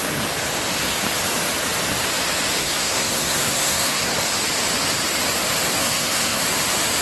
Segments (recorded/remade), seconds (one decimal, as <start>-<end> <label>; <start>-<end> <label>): 0.0-2.6 recorded; 2.6-4.2 remade; 4.2-5.8 recorded; 5.8-6.4 remade; 6.4-7.0 recorded